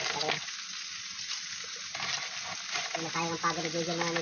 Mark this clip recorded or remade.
recorded